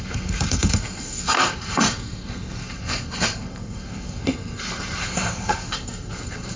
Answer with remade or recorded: remade